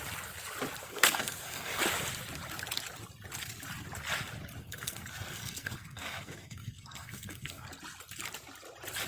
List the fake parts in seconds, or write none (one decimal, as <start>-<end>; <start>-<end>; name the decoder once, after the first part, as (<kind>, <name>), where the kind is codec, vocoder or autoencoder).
0.8-1.8 (codec, SNAC); 4.6-7.7

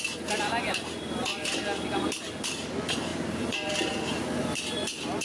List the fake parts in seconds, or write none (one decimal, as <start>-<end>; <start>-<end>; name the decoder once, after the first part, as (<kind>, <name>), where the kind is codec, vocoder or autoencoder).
0.0-5.2 (vocoder, BigVGAN v2)

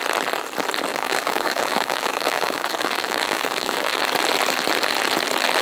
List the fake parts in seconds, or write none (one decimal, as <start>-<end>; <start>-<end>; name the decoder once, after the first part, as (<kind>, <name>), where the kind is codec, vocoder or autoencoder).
0.9-4.0 (codec, DAC)

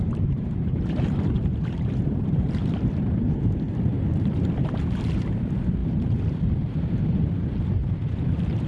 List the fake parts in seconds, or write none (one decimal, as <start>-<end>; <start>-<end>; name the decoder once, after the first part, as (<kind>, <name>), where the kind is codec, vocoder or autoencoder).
0.0-2.6 (vocoder, BigVGAN v2); 4.1-5.8